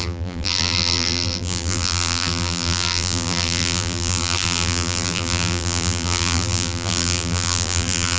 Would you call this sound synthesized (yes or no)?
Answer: yes